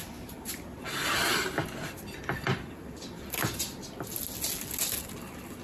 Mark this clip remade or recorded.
recorded